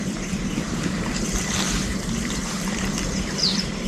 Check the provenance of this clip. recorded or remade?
remade